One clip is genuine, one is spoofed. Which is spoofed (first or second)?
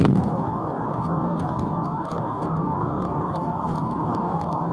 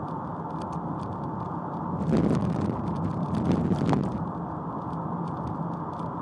first